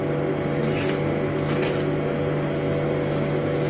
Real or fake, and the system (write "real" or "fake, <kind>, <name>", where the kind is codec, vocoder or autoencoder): real